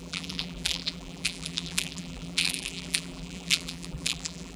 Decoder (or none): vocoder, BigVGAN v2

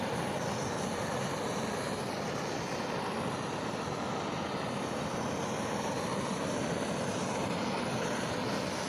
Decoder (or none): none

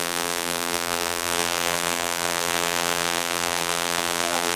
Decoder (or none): vocoder, BigVGAN v2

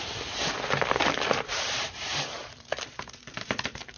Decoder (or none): vocoder, BigVGAN v2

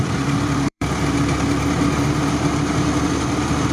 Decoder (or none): vocoder, BigVGAN v2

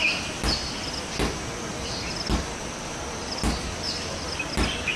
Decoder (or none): none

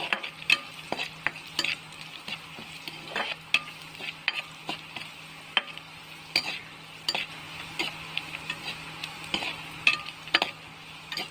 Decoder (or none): none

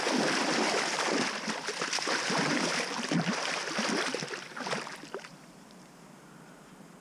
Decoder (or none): vocoder, BigVGAN v2